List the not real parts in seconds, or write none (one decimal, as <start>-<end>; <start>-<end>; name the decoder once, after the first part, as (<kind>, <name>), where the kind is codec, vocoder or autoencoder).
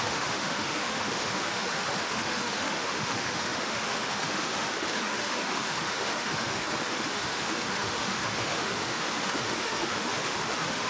0.0-10.9 (autoencoder, DAC-VAE)